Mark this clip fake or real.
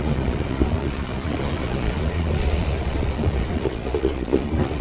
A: fake